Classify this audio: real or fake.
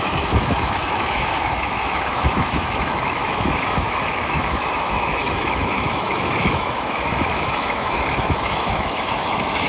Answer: fake